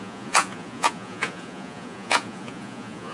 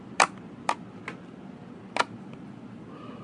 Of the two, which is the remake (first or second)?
first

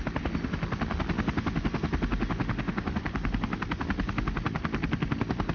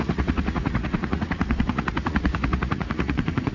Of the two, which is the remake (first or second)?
second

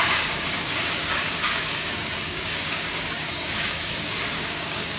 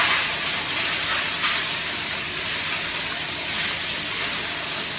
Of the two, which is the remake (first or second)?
first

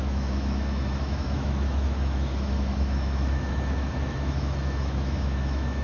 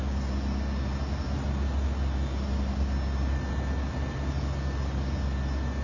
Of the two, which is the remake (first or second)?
first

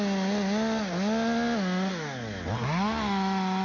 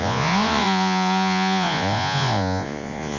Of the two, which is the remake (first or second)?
second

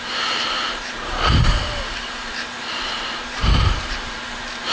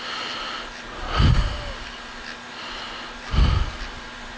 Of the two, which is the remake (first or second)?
first